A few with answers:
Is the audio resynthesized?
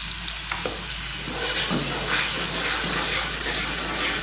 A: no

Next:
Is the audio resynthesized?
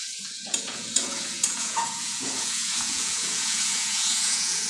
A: yes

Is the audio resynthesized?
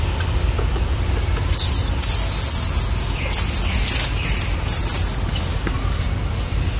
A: no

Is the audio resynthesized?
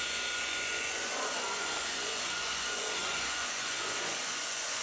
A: yes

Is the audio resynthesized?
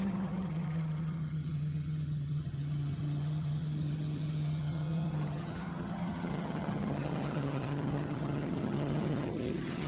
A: yes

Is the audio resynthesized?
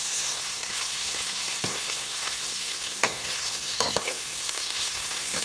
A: yes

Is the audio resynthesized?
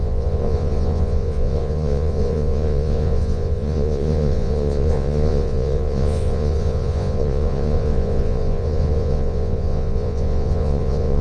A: yes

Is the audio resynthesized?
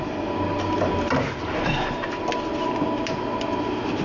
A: no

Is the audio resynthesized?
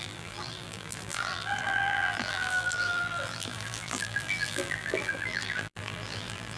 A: yes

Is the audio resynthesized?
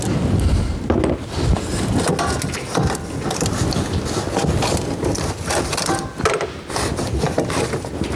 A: no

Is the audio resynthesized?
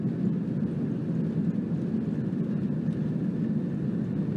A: no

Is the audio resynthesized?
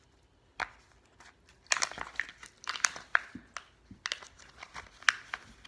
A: no